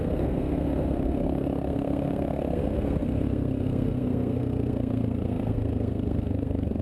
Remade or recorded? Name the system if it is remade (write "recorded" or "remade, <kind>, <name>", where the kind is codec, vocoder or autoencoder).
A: remade, codec, SNAC